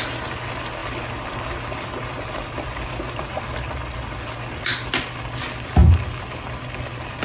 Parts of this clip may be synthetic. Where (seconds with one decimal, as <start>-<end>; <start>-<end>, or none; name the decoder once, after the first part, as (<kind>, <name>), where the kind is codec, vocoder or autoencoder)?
0.8-4.6 (vocoder, BigVGAN v2)